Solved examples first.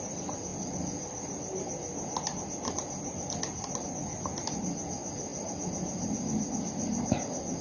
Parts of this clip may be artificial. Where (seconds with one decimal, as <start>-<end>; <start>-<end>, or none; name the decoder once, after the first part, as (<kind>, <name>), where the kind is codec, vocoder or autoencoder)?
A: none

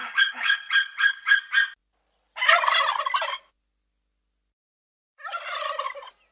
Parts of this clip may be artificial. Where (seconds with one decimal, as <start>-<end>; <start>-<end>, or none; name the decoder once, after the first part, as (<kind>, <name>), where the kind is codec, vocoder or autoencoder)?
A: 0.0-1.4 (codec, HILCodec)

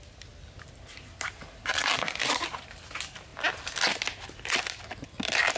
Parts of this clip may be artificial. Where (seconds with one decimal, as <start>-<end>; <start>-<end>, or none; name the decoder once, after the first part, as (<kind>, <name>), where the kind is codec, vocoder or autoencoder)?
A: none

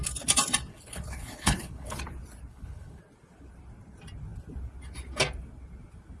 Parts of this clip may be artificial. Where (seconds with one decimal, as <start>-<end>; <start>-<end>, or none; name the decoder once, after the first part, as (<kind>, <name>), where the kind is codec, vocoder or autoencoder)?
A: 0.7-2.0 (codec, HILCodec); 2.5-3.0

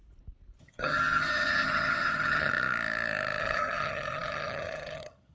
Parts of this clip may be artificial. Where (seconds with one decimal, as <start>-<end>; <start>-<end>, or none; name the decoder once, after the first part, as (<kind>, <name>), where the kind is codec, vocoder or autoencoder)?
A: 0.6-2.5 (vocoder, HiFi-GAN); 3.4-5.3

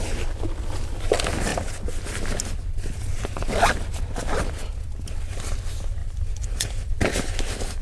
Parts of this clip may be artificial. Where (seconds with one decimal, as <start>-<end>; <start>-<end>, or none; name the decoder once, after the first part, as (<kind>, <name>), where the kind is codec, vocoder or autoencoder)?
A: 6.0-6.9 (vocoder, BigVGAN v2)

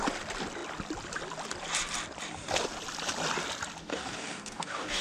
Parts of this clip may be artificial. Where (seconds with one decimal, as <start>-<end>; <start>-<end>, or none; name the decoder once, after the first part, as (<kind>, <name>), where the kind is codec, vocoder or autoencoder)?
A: 3.8-5.0 (codec, DAC)

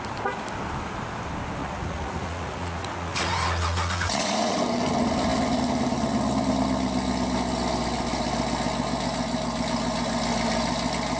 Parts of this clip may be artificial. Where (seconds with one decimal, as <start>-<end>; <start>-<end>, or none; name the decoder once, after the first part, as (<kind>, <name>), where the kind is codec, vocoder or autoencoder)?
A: 1.6-4.6 (vocoder, Vocos)